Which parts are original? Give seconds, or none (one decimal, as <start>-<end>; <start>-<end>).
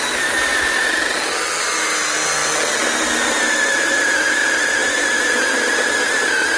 0.0-6.6